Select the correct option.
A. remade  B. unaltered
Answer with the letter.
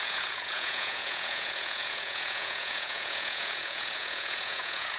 A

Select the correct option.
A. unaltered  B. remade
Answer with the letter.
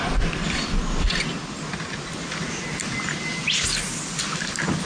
A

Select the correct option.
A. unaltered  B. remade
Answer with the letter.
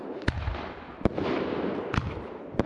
A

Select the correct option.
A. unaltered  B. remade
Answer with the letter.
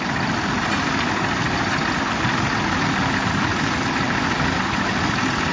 A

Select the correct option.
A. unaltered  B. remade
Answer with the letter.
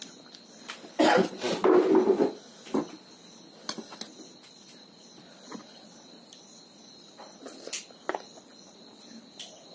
A